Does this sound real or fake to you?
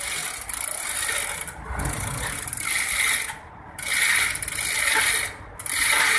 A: real